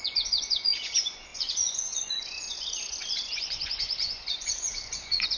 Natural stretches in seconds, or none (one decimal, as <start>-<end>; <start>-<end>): none